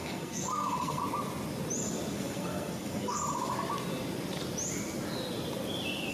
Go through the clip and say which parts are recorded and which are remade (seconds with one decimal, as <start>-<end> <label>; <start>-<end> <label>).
0.0-1.0 remade; 1.0-2.1 recorded; 2.1-3.2 remade; 3.2-6.1 recorded